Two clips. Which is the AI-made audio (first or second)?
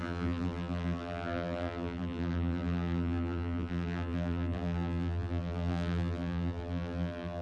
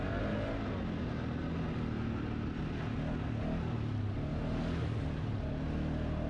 first